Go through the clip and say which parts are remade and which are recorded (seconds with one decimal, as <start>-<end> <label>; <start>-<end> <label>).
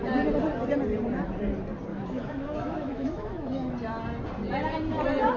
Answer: 0.0-1.9 recorded; 1.9-3.7 remade; 3.7-5.4 recorded